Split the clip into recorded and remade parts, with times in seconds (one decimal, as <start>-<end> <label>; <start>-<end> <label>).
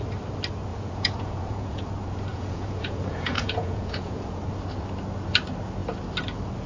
0.0-0.7 recorded; 0.7-1.8 remade; 1.8-2.3 recorded; 2.3-4.4 remade; 4.4-6.7 recorded